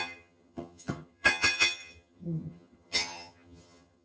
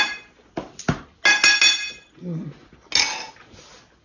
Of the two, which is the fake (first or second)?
first